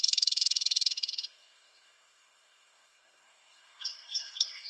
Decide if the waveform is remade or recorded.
remade